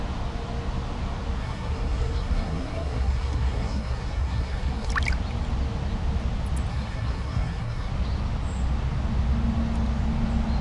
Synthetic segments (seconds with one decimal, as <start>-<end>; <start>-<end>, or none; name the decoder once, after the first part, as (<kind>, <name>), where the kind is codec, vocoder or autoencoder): 1.4-4.9 (codec, SNAC); 6.7-7.9